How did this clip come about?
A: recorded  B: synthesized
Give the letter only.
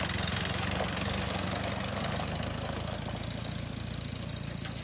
A